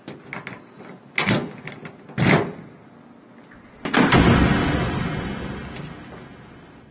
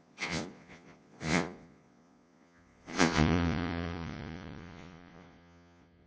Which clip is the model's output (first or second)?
second